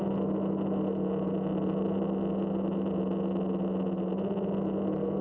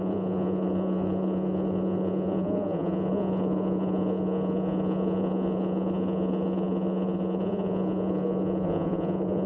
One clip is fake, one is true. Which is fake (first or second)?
second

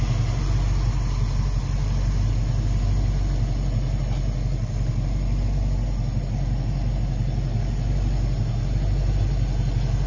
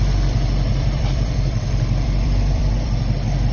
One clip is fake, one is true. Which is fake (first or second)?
second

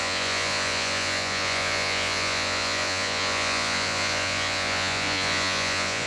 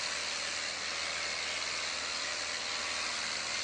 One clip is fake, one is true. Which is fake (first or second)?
first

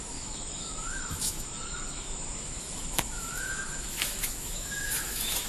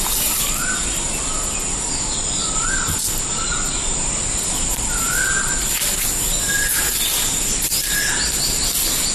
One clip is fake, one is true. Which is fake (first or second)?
first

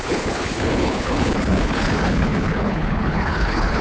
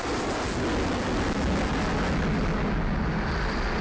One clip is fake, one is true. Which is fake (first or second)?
first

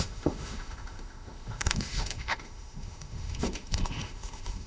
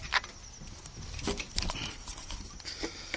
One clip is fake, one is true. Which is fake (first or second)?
first